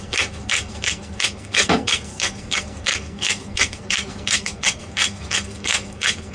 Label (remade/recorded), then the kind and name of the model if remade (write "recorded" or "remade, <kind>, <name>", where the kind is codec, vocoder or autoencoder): remade, codec, SNAC